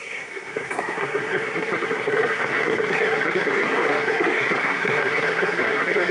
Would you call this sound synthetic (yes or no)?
yes